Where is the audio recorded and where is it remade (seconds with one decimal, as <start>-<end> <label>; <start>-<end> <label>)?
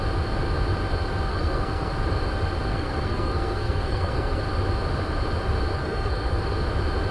0.0-1.3 recorded; 1.3-1.9 remade; 1.9-2.7 recorded; 2.7-4.4 remade; 4.4-5.8 recorded; 5.8-6.4 remade; 6.4-7.1 recorded